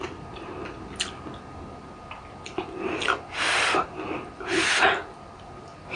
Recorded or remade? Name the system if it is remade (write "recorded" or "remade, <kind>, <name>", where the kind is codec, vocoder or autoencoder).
recorded